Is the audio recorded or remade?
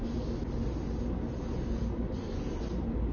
recorded